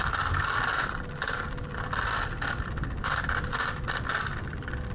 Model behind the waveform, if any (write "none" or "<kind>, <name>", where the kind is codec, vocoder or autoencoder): vocoder, BigVGAN v2